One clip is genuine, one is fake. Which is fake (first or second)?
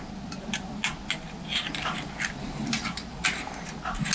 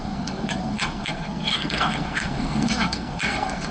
second